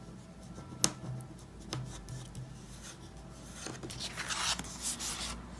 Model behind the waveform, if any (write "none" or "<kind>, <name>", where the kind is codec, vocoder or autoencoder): none